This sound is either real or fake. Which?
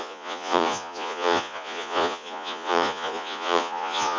fake